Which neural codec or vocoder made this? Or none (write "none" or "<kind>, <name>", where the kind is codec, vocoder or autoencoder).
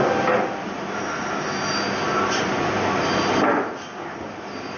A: none